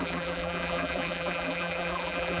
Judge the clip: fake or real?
fake